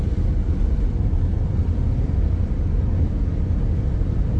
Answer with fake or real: real